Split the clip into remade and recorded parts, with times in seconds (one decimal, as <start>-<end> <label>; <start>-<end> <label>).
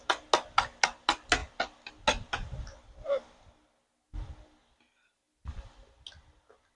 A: 0.0-6.7 recorded